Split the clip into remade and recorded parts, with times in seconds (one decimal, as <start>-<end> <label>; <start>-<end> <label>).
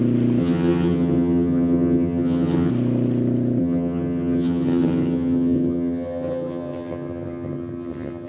0.0-0.4 recorded; 0.4-2.7 remade; 2.7-3.6 recorded; 3.6-8.3 remade